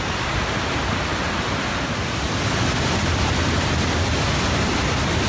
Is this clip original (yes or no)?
yes